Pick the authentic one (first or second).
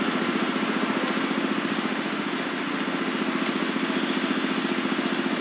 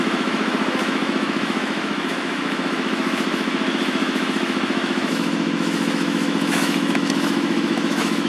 first